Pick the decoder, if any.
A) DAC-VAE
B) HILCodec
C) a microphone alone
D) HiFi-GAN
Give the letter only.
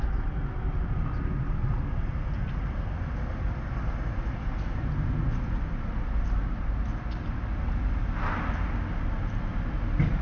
C